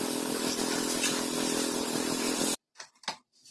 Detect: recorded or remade recorded